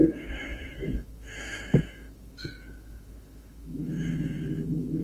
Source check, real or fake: fake